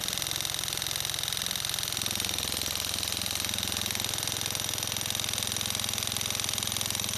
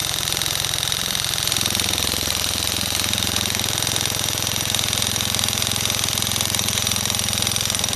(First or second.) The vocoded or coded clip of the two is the second